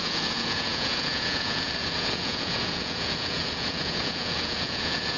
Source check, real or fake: fake